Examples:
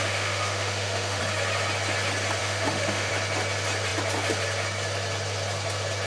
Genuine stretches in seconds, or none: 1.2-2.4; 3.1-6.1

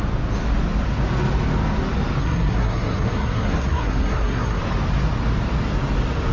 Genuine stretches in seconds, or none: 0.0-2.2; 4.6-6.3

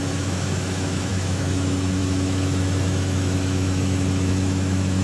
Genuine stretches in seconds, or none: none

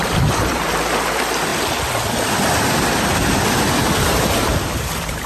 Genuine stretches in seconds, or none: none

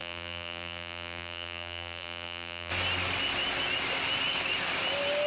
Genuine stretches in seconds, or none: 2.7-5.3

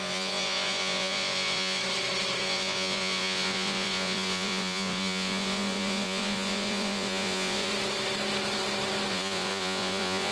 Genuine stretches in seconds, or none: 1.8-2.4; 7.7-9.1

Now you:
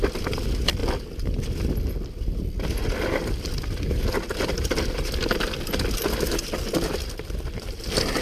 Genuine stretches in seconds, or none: 0.0-8.2

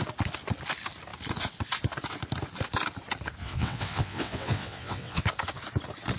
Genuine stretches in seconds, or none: 0.0-3.4; 5.2-6.2